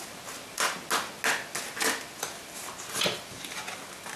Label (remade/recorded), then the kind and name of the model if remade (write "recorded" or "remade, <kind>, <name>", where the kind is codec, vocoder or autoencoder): recorded